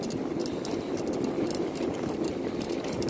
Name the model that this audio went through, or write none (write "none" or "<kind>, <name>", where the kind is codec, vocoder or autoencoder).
none